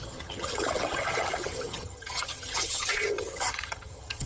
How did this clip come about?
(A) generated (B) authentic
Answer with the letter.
A